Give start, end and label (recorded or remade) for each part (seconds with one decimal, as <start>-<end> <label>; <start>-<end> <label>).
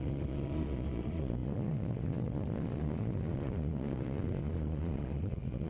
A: 0.0-5.7 remade